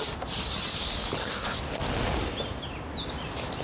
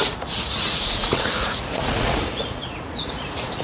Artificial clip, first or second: second